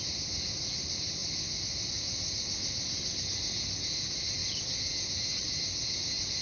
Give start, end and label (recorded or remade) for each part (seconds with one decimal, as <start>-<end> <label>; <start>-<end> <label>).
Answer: 0.0-6.4 recorded